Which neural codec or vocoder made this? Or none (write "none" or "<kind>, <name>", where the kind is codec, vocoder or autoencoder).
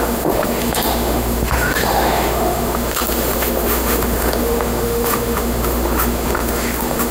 autoencoder, DAC-VAE